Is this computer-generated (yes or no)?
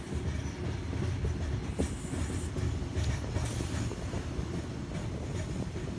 no